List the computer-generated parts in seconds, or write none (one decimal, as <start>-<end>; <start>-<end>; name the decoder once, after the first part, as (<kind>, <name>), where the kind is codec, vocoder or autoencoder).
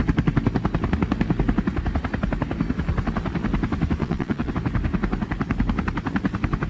4.0-4.5 (vocoder, Vocos)